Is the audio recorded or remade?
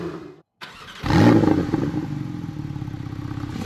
recorded